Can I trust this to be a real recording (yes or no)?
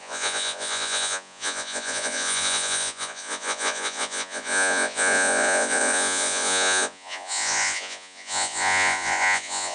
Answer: no